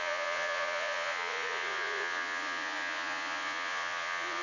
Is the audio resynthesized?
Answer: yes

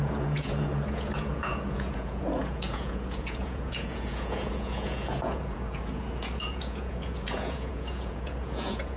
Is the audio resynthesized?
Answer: yes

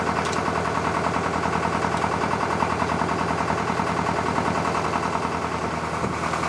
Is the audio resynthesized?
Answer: no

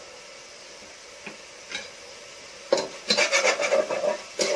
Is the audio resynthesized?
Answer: no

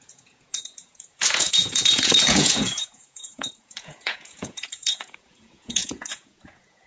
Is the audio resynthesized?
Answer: yes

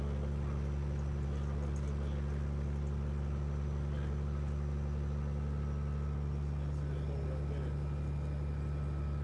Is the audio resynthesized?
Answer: no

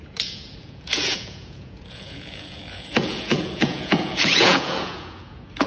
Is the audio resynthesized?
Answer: yes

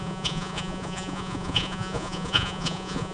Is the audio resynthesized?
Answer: yes